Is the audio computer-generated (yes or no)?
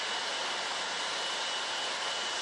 no